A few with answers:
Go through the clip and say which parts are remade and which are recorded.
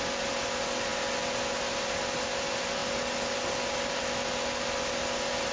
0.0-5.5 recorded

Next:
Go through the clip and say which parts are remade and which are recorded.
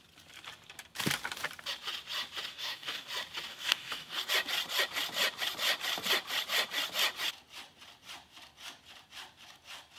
0.0-2.5 recorded; 2.5-3.1 remade; 3.1-3.5 recorded; 3.5-4.3 remade; 4.3-10.0 recorded